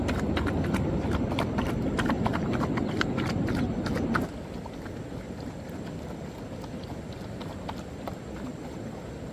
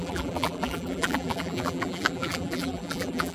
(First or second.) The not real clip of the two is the second